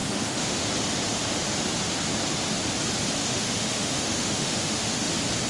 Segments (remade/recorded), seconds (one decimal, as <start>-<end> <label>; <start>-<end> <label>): 0.0-0.7 remade; 0.7-3.2 recorded; 3.2-5.1 remade; 5.1-5.5 recorded